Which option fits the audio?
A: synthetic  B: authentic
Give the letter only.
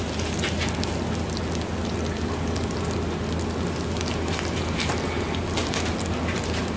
B